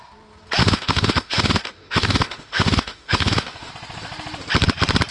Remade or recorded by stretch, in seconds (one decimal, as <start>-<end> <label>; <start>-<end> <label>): 0.0-0.6 recorded; 0.6-3.7 remade; 3.7-5.1 recorded